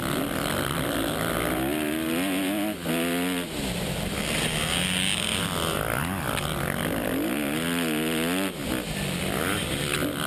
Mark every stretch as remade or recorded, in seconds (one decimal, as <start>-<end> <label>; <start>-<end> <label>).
0.0-10.3 recorded